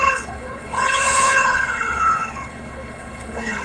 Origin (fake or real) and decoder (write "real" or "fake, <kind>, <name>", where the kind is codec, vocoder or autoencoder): fake, codec, HILCodec